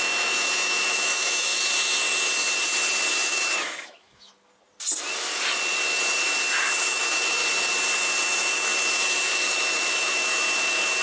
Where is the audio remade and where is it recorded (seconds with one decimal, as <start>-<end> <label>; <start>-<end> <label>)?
0.0-1.5 remade; 1.5-3.1 recorded; 3.1-4.3 remade; 4.3-6.8 recorded; 6.8-7.4 remade; 7.4-8.4 recorded; 8.4-11.0 remade